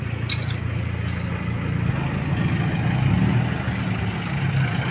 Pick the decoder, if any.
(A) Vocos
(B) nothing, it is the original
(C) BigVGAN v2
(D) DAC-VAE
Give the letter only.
B